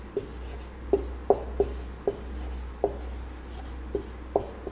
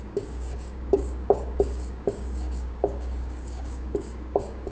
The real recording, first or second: first